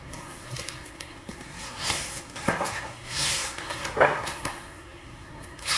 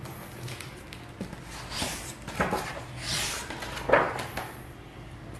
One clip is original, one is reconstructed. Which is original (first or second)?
second